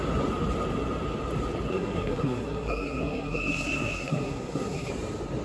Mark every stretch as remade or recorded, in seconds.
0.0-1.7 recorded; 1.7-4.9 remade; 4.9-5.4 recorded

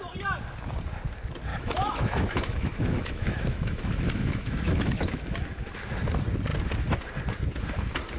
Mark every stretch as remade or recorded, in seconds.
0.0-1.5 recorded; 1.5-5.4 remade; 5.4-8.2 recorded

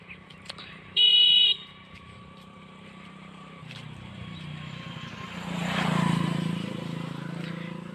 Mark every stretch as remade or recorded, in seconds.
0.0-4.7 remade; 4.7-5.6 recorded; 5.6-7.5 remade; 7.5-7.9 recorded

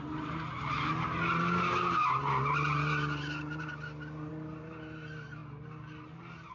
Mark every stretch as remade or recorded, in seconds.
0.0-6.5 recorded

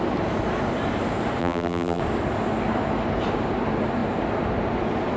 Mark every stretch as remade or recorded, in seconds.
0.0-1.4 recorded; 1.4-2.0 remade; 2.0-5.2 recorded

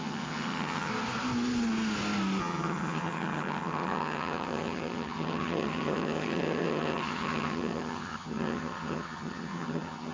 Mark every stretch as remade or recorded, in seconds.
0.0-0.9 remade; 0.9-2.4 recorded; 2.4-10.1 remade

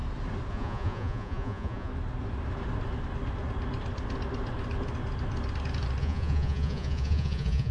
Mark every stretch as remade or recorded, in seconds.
0.0-0.5 recorded; 0.5-1.9 remade; 1.9-6.0 recorded; 6.0-7.7 remade